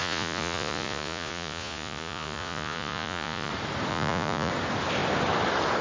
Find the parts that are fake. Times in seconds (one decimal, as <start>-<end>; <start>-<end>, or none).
0.0-3.5; 3.9-4.5